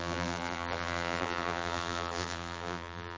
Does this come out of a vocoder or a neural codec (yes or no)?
yes